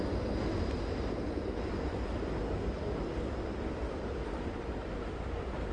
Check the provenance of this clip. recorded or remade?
recorded